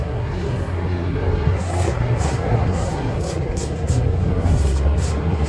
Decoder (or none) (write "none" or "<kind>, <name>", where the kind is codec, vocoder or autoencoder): codec, SNAC